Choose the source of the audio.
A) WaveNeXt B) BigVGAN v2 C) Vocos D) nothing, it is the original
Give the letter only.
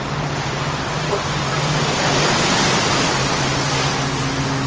D